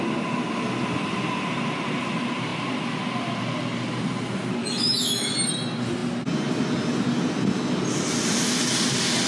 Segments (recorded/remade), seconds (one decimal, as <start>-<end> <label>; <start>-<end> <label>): 0.0-4.6 recorded; 4.6-5.3 remade; 5.3-9.3 recorded